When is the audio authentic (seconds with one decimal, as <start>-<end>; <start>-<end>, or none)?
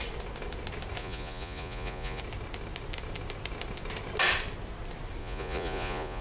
0.0-1.0; 2.2-5.2